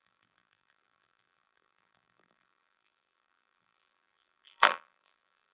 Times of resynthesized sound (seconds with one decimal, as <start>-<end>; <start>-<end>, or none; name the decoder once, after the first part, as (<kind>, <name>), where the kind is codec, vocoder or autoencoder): 0.0-5.5 (vocoder, BigVGAN v2)